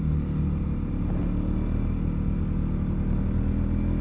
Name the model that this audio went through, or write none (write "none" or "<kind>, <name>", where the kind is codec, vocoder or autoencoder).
none